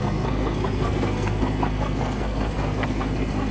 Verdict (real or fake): fake